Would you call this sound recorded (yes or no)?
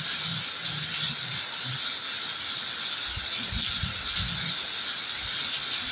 yes